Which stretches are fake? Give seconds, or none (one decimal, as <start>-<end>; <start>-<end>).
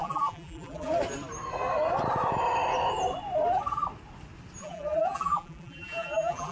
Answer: 0.0-0.9; 4.6-6.5